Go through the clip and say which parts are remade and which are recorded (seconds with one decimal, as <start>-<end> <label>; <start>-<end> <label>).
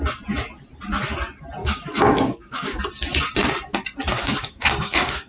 0.0-1.6 recorded; 1.6-2.8 remade; 2.8-4.1 recorded; 4.1-5.3 remade